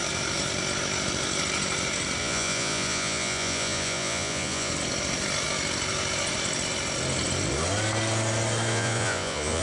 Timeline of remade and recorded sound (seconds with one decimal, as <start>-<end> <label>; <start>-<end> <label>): 0.0-2.2 recorded; 2.2-4.7 remade; 4.7-8.7 recorded; 8.7-9.6 remade